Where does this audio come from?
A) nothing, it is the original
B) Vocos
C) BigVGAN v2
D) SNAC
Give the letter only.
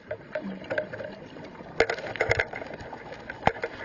A